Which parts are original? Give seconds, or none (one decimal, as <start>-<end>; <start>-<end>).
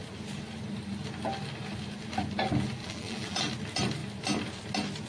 0.0-2.8; 3.5-5.1